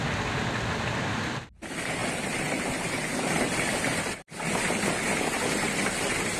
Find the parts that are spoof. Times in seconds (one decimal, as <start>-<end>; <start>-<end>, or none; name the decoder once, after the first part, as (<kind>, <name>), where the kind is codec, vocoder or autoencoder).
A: 2.0-5.8 (vocoder, BigVGAN v2)